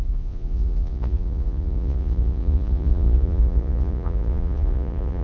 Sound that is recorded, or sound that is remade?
remade